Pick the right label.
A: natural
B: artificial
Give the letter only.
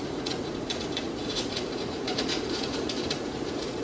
B